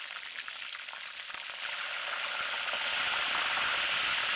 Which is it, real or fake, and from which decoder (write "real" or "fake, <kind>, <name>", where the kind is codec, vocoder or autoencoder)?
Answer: real